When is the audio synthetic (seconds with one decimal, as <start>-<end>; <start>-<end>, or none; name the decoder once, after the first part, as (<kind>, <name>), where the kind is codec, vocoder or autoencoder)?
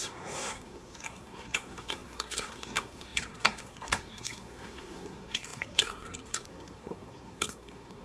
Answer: 0.0-8.0 (codec, SNAC)